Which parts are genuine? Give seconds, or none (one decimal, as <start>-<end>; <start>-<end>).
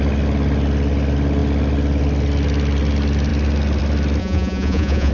0.0-4.2